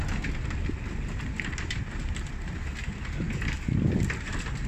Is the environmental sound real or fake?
real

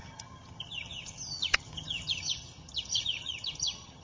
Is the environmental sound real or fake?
fake